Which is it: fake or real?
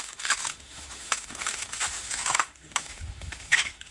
fake